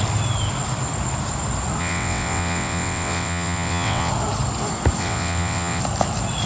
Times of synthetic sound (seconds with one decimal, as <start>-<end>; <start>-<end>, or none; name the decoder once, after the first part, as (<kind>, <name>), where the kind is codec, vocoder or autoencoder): 1.8-4.1 (vocoder, WaveNeXt); 5.0-5.8